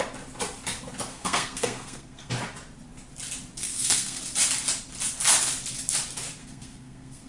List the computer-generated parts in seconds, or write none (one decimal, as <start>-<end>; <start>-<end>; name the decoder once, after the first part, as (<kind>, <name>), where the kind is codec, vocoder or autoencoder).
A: 1.1-2.3 (codec, SNAC); 3.6-4.2; 6.4-7.3